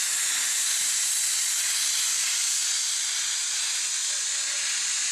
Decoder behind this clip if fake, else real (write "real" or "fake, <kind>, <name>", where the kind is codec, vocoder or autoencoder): real